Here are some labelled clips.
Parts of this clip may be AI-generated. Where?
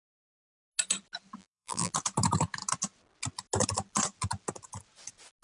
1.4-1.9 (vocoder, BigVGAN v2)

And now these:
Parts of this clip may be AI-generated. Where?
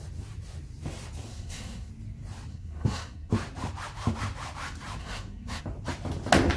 1.3-1.9 (codec, SNAC); 2.5-3.3; 5.0-5.6